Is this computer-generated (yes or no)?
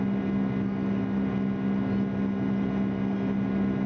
no